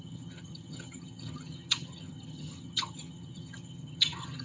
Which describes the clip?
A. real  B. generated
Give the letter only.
B